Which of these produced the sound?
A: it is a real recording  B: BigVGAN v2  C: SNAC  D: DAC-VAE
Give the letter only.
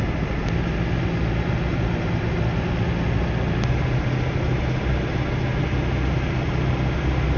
A